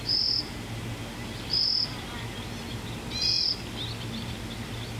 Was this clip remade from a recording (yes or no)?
no